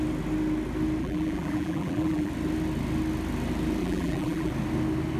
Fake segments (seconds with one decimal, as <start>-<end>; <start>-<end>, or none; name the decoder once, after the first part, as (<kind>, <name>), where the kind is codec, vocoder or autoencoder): 1.0-2.3 (vocoder, BigVGAN v2); 3.8-4.5